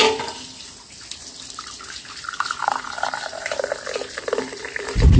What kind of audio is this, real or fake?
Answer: real